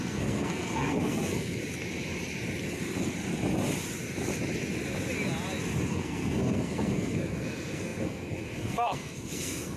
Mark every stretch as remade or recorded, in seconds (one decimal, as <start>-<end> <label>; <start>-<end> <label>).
0.0-1.6 remade; 1.6-5.9 recorded; 5.9-9.8 remade